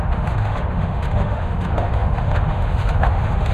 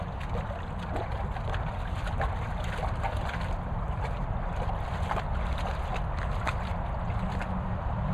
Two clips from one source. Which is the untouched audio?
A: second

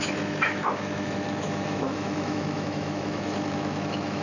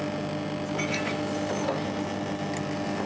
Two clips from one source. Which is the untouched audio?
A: second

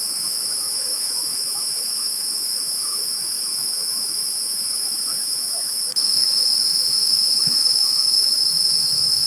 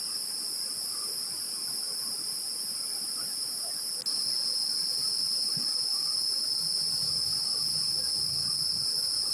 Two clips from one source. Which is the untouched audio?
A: second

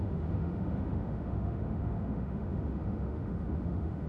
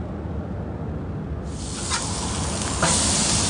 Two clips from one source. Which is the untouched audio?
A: second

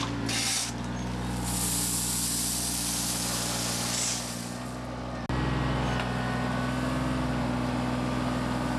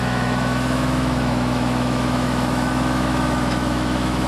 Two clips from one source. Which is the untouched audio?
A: first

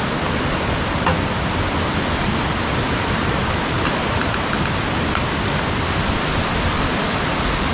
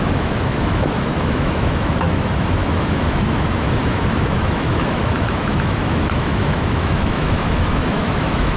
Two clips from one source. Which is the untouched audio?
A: first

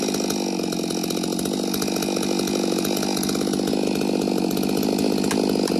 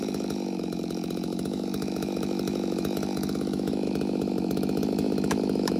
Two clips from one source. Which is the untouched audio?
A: first